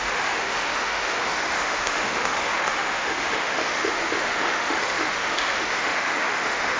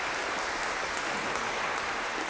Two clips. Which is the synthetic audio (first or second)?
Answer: first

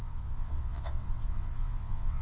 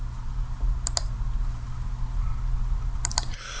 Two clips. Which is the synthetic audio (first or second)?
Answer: first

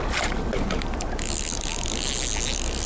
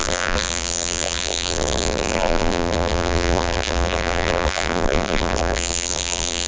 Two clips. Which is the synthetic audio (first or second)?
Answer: second